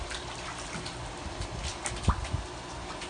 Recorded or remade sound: recorded